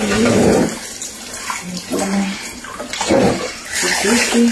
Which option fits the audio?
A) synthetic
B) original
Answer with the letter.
B